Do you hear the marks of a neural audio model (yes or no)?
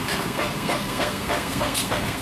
yes